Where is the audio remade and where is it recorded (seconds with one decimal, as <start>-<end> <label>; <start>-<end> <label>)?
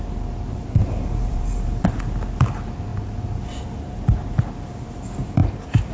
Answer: 0.0-0.8 recorded; 0.8-2.5 remade; 2.5-2.9 recorded; 2.9-4.4 remade; 4.4-5.4 recorded; 5.4-5.9 remade